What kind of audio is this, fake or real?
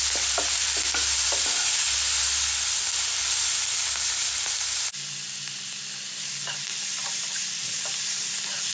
real